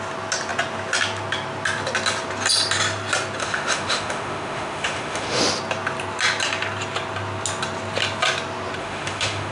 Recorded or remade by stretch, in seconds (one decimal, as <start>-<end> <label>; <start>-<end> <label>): 0.0-3.4 recorded; 3.4-5.4 remade; 5.4-8.8 recorded; 8.8-9.5 remade